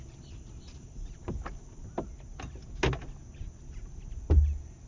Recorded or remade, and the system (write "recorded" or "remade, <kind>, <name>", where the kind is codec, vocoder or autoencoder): recorded